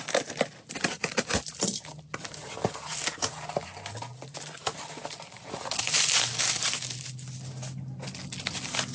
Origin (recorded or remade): recorded